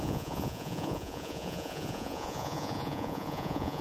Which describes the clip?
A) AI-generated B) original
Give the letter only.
A